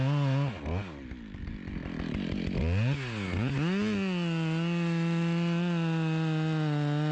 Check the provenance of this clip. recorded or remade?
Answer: recorded